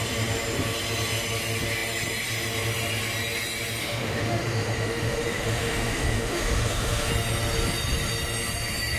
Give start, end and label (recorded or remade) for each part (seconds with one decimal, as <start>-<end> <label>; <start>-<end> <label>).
0.0-3.8 recorded; 3.8-7.1 remade; 7.1-9.0 recorded